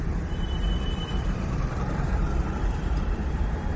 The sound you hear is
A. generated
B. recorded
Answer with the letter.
A